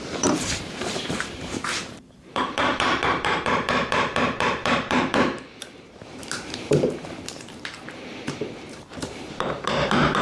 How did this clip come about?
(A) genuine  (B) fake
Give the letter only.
B